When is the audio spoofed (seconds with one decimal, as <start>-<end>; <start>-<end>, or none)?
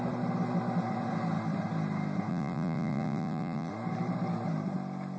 2.3-3.7